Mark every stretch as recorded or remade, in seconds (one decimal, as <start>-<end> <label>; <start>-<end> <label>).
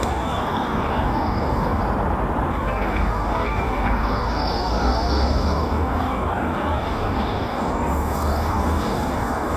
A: 0.0-1.8 remade; 1.8-2.5 recorded; 2.5-9.6 remade